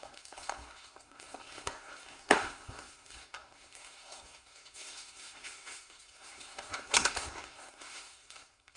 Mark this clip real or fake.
fake